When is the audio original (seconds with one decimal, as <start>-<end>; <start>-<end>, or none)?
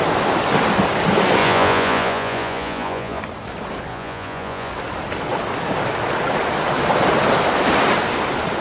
0.0-1.4; 3.2-3.9; 4.7-8.6